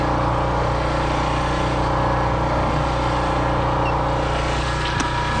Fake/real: real